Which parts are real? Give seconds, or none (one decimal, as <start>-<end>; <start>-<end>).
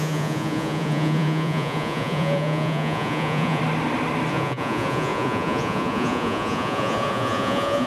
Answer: 3.6-4.3